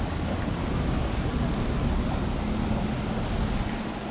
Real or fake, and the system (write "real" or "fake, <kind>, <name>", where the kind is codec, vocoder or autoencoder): real